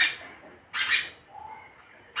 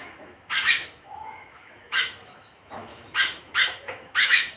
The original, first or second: first